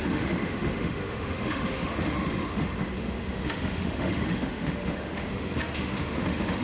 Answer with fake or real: fake